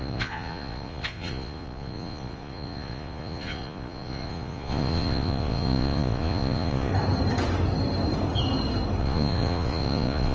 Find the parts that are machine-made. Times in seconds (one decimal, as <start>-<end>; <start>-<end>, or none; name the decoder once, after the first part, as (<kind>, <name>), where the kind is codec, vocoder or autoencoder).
0.0-6.9 (vocoder, Vocos); 9.0-10.3